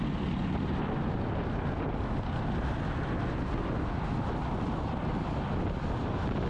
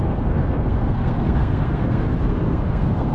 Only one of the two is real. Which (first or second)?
first